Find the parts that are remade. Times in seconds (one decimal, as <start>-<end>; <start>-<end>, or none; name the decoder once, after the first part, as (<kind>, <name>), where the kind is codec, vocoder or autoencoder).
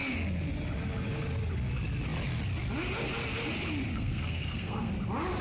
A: 3.9-4.9 (codec, SNAC)